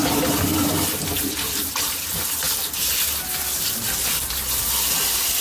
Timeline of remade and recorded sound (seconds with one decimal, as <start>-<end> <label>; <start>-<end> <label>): 0.0-5.4 recorded